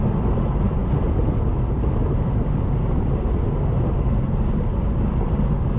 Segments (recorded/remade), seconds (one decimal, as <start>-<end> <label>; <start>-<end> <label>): 0.0-5.8 recorded